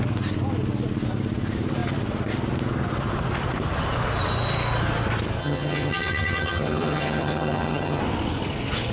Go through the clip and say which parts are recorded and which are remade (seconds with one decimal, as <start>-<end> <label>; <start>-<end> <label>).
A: 0.0-5.4 recorded; 5.4-8.0 remade; 8.0-8.9 recorded